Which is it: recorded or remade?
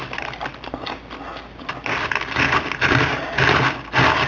recorded